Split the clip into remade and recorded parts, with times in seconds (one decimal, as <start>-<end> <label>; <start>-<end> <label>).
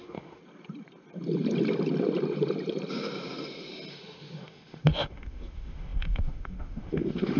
0.0-0.4 remade; 0.4-3.9 recorded; 3.9-7.4 remade